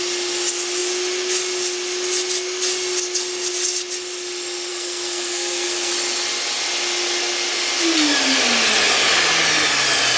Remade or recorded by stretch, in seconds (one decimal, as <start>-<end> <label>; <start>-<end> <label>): 0.0-4.7 recorded; 4.7-5.9 remade; 5.9-10.2 recorded